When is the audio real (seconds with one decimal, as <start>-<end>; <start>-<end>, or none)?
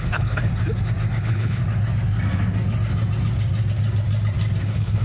0.5-1.2; 1.6-4.6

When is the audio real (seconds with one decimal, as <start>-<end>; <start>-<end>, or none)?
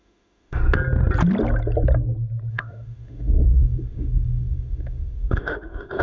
0.6-2.5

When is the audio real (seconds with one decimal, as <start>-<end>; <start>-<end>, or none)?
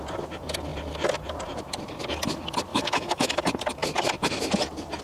0.0-2.7; 3.4-5.0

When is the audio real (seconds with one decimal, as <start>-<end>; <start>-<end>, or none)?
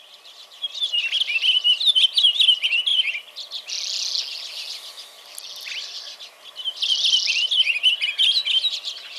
0.0-9.2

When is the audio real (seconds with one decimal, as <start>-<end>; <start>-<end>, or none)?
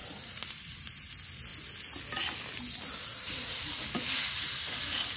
1.1-3.1; 3.7-5.2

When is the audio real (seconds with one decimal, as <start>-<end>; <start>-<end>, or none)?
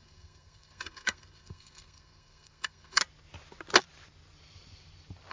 3.0-5.3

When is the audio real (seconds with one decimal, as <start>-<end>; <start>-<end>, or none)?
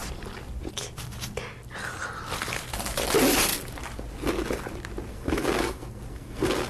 0.0-5.1